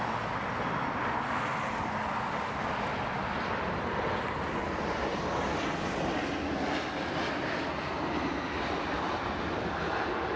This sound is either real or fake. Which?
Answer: real